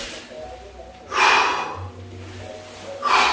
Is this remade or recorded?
recorded